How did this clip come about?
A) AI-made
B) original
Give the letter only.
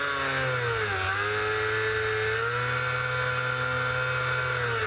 B